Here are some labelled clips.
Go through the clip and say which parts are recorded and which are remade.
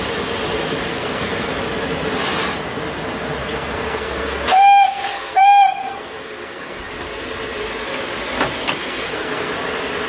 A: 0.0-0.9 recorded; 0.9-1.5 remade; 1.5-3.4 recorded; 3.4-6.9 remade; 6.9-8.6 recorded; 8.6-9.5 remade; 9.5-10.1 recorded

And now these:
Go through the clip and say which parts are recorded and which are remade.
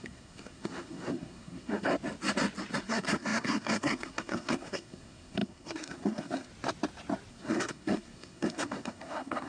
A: 0.0-1.9 remade; 1.9-2.8 recorded; 2.8-6.5 remade; 6.5-7.3 recorded; 7.3-9.5 remade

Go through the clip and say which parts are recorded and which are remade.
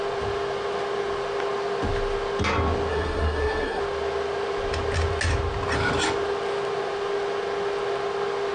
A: 0.0-2.9 recorded; 2.9-3.8 remade; 3.8-8.5 recorded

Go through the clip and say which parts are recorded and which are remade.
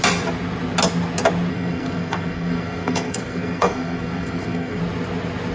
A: 0.0-1.5 recorded; 1.5-4.8 remade; 4.8-5.5 recorded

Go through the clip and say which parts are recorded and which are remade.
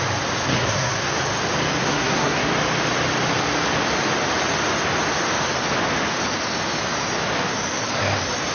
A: 0.0-0.6 recorded; 0.6-1.1 remade; 1.1-1.8 recorded; 1.8-2.5 remade; 2.5-8.5 recorded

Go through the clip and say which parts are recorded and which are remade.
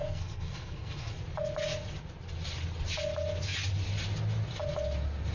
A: 0.0-1.1 remade; 1.1-5.3 recorded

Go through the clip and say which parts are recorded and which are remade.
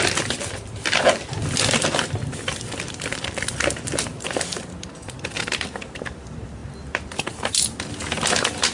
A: 0.0-8.7 recorded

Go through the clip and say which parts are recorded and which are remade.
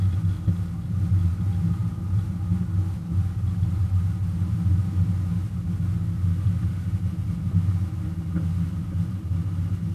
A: 0.0-9.9 recorded